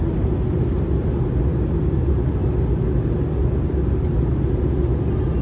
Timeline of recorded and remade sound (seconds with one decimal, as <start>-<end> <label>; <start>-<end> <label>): 0.0-5.4 recorded

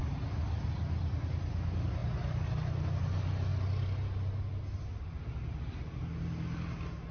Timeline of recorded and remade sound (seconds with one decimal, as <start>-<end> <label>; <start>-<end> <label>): 0.0-7.1 recorded